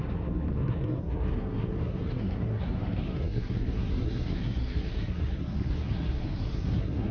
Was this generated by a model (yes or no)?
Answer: yes